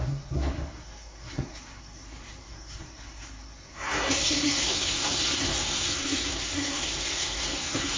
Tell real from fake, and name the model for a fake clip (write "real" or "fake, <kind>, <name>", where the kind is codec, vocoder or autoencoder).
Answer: fake, codec, SNAC